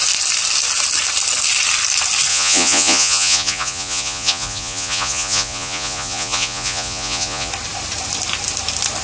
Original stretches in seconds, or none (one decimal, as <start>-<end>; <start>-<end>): 0.0-2.3; 7.5-9.0